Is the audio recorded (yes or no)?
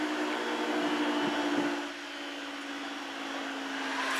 yes